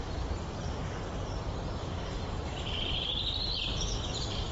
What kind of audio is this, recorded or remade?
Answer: remade